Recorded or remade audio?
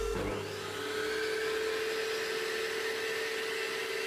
recorded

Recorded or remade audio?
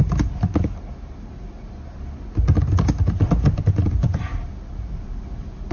recorded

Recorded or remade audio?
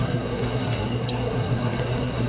remade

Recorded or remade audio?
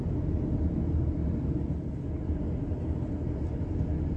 recorded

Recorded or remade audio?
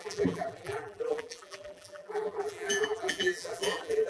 remade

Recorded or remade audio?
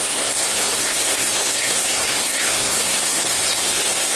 remade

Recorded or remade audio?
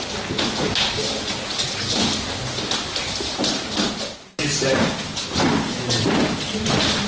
recorded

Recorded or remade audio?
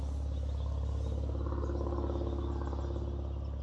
recorded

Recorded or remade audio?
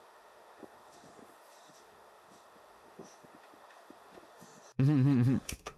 remade